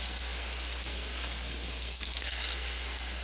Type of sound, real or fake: fake